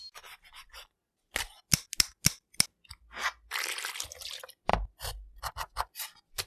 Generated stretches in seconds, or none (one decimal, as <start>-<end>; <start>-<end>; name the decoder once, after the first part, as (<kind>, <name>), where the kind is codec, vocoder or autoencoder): none

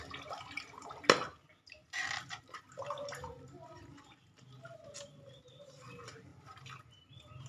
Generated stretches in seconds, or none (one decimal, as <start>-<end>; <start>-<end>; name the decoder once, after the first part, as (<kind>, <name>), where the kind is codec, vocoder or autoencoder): 6.3-7.5 (vocoder, BigVGAN v2)

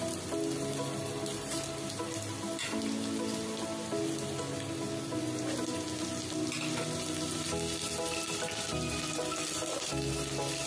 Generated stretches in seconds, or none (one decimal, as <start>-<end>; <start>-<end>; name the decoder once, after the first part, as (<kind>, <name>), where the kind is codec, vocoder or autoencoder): none

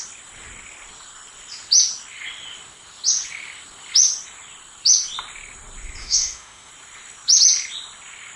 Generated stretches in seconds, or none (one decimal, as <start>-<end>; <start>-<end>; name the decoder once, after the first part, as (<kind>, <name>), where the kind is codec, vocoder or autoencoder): 6.0-6.7 (autoencoder, DAC-VAE)

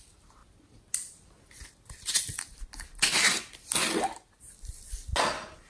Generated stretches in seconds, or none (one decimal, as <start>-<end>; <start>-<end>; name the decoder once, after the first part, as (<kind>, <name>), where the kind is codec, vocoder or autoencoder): none